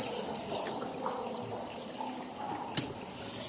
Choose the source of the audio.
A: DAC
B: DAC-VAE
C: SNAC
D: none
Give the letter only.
D